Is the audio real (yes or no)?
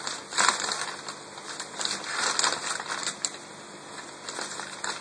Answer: yes